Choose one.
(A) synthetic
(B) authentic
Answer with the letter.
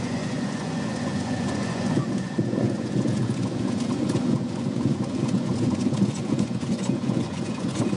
A